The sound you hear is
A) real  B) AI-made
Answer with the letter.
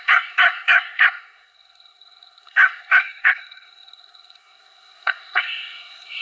B